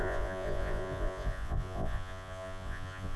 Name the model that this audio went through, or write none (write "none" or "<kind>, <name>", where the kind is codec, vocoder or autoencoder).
vocoder, Vocos